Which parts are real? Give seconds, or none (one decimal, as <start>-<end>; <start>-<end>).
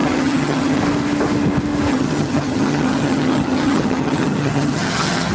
0.8-1.9